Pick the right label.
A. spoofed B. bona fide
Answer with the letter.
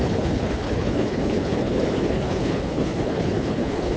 A